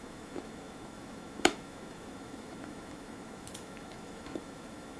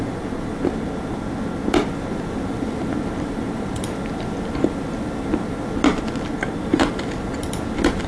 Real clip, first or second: second